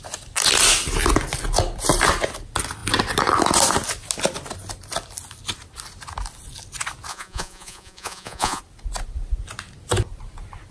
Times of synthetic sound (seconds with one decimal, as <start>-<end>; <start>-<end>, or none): 7.1-8.6